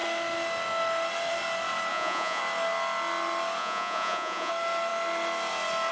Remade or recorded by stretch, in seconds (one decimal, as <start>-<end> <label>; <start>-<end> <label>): 0.0-1.9 recorded; 1.9-2.4 remade; 2.4-3.6 recorded; 3.6-4.5 remade; 4.5-5.9 recorded

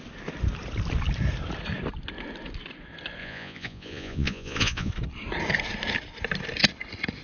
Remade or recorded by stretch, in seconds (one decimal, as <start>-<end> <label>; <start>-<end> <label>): 0.0-3.2 recorded; 3.2-4.9 remade; 4.9-7.2 recorded

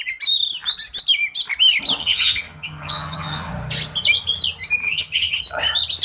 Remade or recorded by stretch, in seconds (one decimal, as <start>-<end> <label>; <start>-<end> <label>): 0.0-2.0 recorded; 2.0-3.5 remade; 3.5-4.8 recorded; 4.8-5.4 remade; 5.4-6.0 recorded

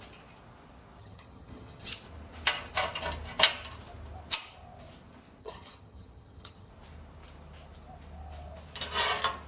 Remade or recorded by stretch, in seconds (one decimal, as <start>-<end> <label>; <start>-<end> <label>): 0.0-1.0 recorded; 1.0-1.9 remade; 1.9-5.4 recorded; 5.4-6.7 remade; 6.7-9.5 recorded

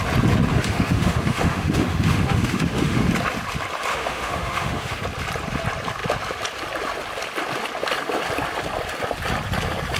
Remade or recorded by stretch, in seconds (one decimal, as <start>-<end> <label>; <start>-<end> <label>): 0.0-0.5 recorded; 0.5-3.1 remade; 3.1-3.9 recorded; 3.9-5.0 remade; 5.0-10.0 recorded

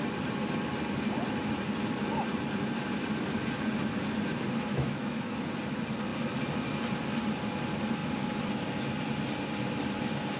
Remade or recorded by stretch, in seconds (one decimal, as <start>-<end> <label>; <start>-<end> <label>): 0.0-4.7 recorded; 4.7-5.5 remade; 5.5-10.4 recorded

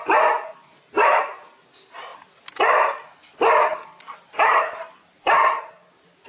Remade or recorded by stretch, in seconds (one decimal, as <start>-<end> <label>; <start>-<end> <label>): 0.0-6.3 recorded

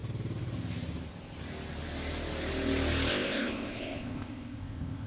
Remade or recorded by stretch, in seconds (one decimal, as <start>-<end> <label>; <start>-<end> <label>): 0.0-3.1 recorded; 3.1-5.1 remade